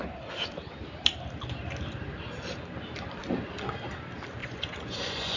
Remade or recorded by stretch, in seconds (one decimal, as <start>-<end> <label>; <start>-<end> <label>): 0.0-4.4 recorded; 4.4-5.4 remade